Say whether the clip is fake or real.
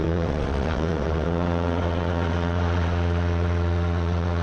fake